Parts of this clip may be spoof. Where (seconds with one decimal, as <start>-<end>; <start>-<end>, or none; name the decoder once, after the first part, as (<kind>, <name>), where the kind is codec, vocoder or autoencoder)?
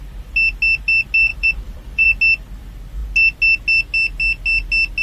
1.3-2.2 (vocoder, BigVGAN v2)